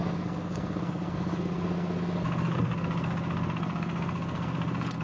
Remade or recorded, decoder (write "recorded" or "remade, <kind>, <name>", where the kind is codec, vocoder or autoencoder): remade, codec, SNAC